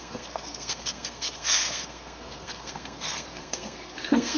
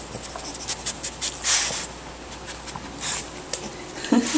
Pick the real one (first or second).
second